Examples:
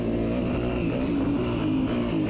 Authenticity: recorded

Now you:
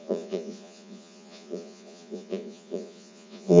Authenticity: remade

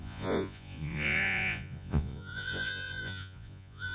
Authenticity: remade